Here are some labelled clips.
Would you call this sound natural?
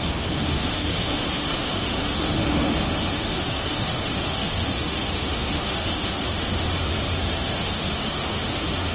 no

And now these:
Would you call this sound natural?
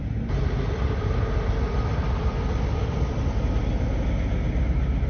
yes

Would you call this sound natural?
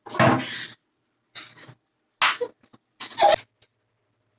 yes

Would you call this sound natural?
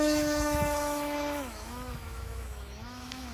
no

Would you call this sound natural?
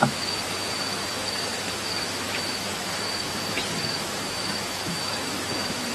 no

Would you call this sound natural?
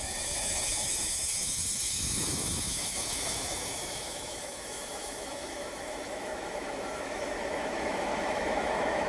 no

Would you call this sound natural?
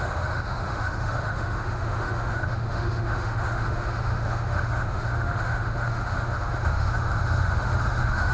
no